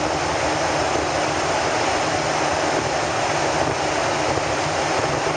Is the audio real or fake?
real